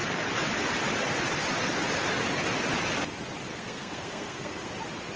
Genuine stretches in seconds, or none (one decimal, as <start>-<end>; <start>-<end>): 0.0-3.5; 4.7-5.2